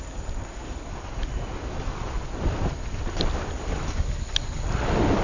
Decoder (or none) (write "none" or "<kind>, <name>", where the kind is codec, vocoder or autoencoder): none